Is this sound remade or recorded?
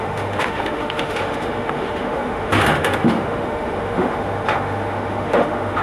remade